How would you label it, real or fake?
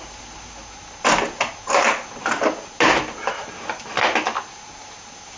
real